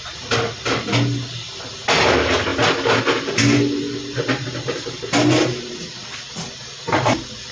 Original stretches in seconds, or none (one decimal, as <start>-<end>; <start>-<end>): 0.0-7.5